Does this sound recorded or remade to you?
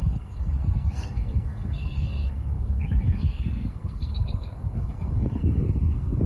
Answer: remade